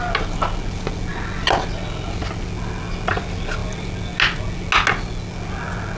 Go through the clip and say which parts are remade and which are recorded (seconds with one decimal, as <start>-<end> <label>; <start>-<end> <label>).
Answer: 0.0-6.0 recorded